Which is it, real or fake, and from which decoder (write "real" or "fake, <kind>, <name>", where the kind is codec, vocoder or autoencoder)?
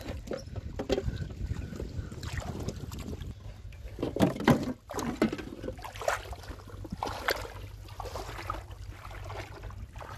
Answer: real